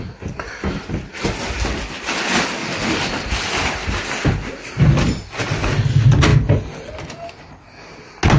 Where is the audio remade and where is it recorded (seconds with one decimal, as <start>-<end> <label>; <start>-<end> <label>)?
0.0-8.4 recorded